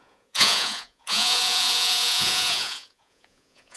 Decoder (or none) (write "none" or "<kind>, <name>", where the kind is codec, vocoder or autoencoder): vocoder, Vocos